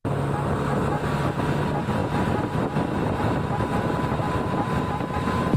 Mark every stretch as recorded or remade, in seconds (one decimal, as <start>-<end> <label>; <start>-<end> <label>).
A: 0.0-2.0 recorded; 2.0-5.6 remade